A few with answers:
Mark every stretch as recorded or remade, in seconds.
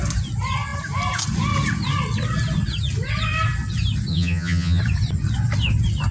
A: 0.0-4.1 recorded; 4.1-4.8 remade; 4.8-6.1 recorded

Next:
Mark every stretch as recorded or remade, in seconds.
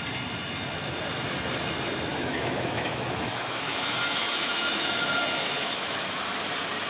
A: 0.0-2.1 recorded; 2.1-6.2 remade; 6.2-6.9 recorded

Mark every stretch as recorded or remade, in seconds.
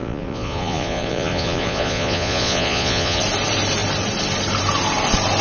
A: 0.0-3.2 remade; 3.2-5.4 recorded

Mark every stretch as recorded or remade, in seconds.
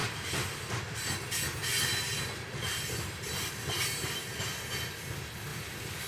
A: 0.0-5.5 recorded; 5.5-6.1 remade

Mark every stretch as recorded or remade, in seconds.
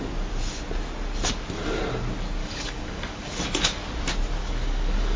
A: 0.0-2.4 recorded; 2.4-3.4 remade; 3.4-4.4 recorded; 4.4-5.2 remade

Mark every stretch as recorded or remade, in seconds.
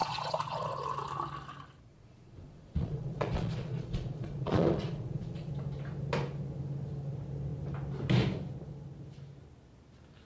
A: 0.0-0.7 remade; 0.7-1.9 recorded; 1.9-5.5 remade; 5.5-10.3 recorded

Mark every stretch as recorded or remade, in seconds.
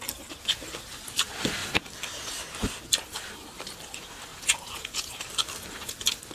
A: 0.0-4.3 recorded; 4.3-5.1 remade; 5.1-6.3 recorded